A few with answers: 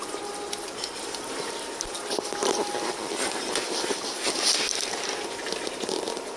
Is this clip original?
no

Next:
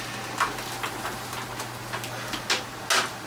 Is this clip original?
yes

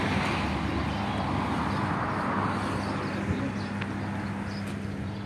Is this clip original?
yes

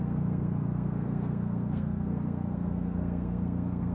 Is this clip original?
no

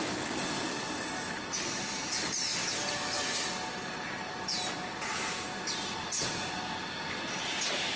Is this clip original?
yes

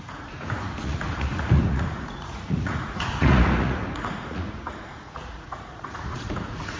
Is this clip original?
no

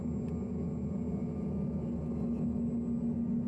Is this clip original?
yes